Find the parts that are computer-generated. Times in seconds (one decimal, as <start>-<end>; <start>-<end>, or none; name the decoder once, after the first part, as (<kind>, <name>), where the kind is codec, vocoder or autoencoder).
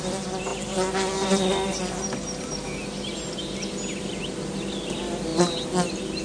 none